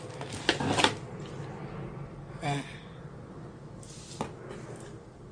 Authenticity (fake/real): real